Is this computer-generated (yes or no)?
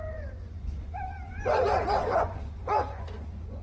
yes